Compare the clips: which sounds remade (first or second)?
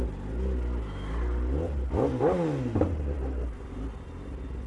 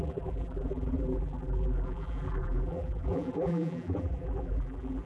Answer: second